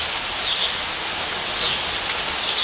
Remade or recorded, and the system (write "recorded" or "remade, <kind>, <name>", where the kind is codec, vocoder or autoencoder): recorded